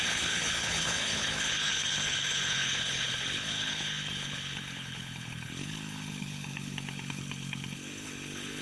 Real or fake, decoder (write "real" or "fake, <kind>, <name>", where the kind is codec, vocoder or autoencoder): fake, codec, HILCodec